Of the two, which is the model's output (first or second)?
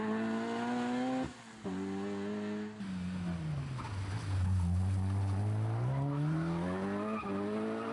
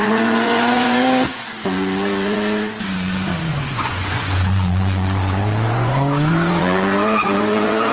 second